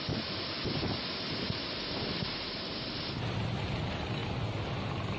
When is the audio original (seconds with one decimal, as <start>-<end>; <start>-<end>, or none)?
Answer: 0.0-5.2